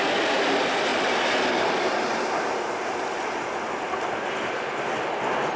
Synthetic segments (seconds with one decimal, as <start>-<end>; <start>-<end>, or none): none